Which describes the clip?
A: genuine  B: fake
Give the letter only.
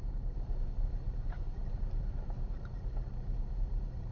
B